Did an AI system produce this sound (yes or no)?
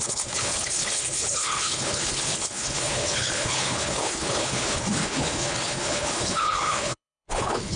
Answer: yes